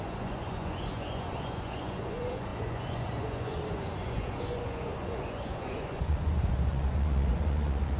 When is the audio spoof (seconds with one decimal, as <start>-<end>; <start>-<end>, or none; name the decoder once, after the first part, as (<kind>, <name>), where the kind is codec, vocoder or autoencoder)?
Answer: 0.0-8.0 (vocoder, Vocos)

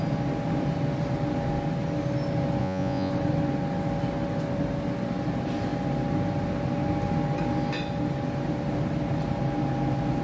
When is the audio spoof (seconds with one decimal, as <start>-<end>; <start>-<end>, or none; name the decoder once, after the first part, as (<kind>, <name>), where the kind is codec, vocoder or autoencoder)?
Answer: 2.6-3.1 (vocoder, Vocos)

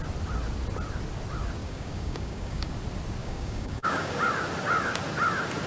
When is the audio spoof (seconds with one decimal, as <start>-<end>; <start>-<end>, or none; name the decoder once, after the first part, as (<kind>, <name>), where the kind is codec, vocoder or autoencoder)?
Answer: 1.6-2.7 (codec, DAC); 3.2-4.2